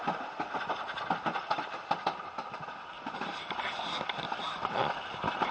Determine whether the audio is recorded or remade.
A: recorded